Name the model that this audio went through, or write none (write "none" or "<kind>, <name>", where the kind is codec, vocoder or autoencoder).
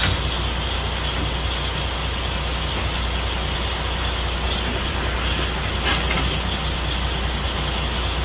none